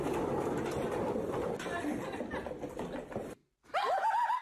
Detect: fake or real real